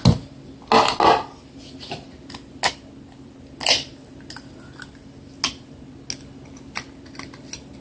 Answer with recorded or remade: recorded